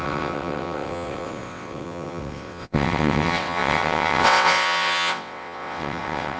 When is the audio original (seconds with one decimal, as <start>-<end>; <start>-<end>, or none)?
none